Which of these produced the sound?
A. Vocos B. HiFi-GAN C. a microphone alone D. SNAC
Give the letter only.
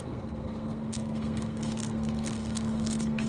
D